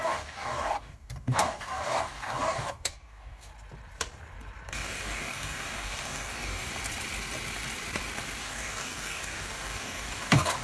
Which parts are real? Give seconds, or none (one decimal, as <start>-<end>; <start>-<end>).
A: 3.5-4.7; 6.7-8.4